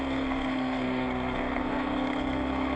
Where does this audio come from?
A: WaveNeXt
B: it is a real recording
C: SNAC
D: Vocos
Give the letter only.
C